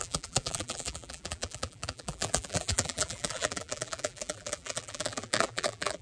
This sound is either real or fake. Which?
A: fake